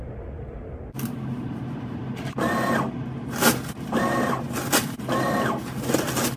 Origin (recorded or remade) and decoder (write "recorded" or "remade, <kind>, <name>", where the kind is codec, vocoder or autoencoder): recorded